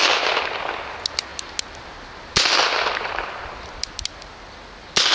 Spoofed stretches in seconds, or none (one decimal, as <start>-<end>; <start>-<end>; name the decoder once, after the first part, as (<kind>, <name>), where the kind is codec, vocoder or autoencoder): none